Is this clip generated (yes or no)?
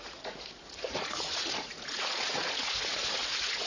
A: yes